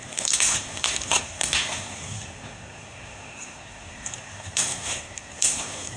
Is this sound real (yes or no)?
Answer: no